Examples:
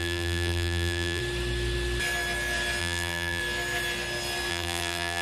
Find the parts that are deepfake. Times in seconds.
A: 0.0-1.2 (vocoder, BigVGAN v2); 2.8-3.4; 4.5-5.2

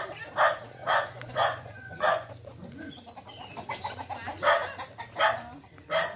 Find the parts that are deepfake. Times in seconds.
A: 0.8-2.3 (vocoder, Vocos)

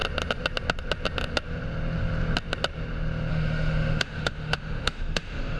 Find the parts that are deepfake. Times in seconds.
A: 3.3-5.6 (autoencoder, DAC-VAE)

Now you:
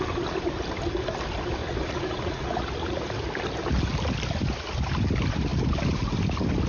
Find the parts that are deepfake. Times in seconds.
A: 1.6-3.0 (vocoder, Vocos)